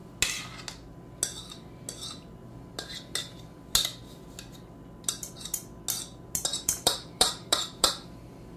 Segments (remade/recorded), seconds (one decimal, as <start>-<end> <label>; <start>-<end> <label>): 0.0-6.5 recorded; 6.5-7.9 remade; 7.9-8.6 recorded